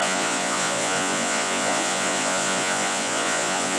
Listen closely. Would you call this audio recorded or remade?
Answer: remade